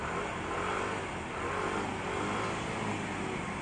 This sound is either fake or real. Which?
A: real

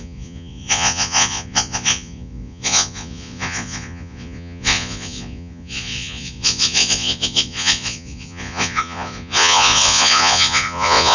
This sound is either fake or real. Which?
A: fake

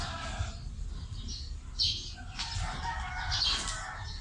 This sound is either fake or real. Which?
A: real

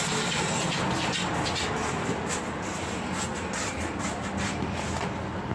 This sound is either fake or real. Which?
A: real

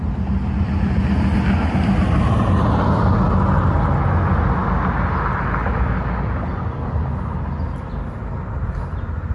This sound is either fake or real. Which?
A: real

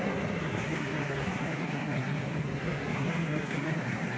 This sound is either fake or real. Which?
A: fake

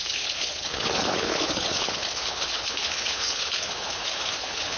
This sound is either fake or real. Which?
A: fake